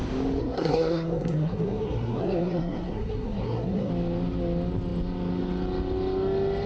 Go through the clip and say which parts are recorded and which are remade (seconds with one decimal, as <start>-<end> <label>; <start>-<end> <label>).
0.0-0.4 recorded; 0.4-3.9 remade; 3.9-6.7 recorded